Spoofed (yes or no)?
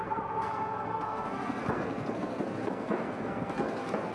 yes